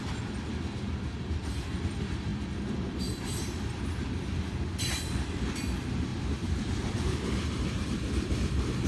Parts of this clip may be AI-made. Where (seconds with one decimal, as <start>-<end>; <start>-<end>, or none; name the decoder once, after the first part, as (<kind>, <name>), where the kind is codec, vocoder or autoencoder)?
6.1-8.9 (vocoder, BigVGAN v2)